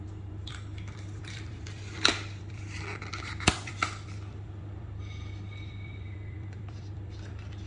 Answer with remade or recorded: remade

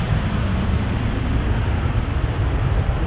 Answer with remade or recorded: recorded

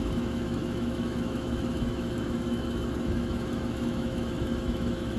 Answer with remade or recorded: remade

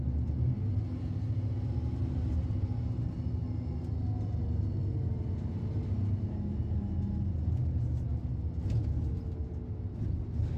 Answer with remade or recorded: recorded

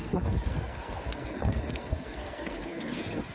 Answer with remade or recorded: remade